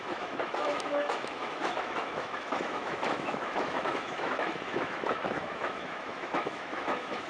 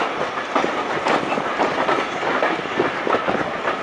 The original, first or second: second